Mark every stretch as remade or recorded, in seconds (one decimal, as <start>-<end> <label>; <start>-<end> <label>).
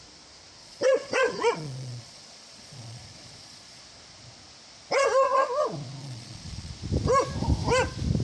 0.0-0.6 recorded; 0.6-3.8 remade; 3.8-6.0 recorded; 6.0-6.7 remade; 6.7-8.2 recorded